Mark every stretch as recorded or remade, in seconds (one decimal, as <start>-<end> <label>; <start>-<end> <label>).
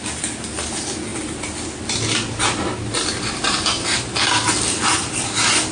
0.0-5.7 recorded